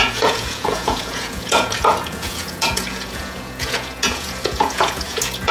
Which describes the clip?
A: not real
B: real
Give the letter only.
A